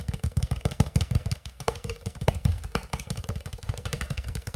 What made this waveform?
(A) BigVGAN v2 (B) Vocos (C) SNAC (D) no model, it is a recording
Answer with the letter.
C